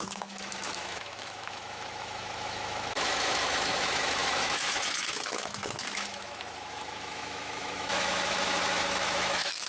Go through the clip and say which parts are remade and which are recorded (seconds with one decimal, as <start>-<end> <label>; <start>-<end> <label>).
0.0-9.7 remade